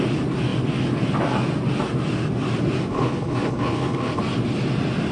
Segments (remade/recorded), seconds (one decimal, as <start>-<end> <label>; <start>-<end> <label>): 0.0-2.9 recorded; 2.9-4.2 remade; 4.2-5.1 recorded

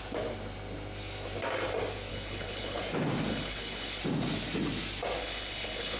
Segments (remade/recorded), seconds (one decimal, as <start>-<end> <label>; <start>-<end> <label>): 0.0-2.1 recorded; 2.1-2.8 remade; 2.8-3.3 recorded; 3.3-4.0 remade; 4.0-5.2 recorded; 5.2-6.0 remade